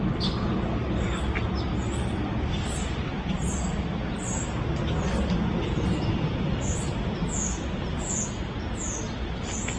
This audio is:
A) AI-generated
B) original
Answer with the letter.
B